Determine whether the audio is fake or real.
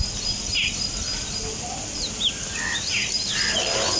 real